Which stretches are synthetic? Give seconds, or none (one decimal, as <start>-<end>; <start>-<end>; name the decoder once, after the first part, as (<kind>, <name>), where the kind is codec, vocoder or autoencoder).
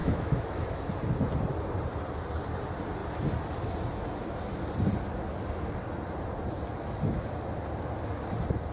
0.0-0.9 (autoencoder, DAC-VAE)